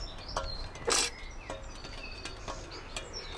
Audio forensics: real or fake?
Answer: real